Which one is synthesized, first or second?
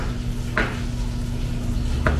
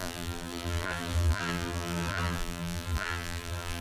second